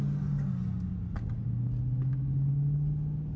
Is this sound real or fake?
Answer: real